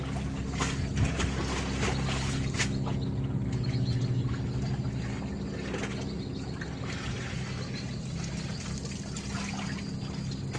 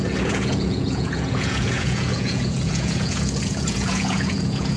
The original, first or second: first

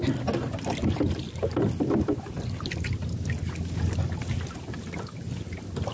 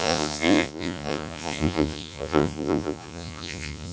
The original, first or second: first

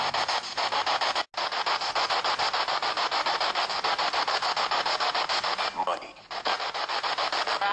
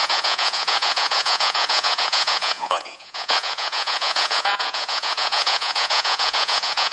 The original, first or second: first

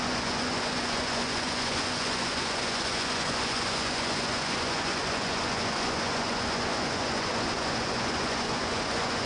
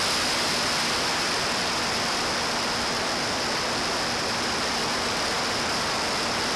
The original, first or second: second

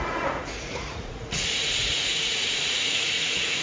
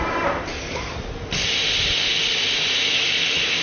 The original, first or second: second